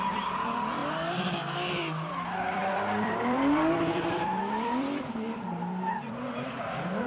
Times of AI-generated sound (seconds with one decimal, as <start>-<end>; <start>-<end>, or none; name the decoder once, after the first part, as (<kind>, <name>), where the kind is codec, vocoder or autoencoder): 0.0-0.8 (vocoder, BigVGAN v2); 2.1-7.1